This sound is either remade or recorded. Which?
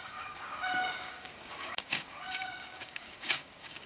remade